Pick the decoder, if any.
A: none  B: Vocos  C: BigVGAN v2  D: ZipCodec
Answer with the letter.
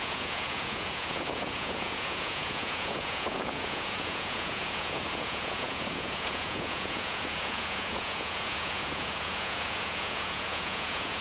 B